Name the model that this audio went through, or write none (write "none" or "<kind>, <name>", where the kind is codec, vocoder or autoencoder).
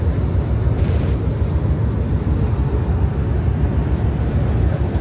none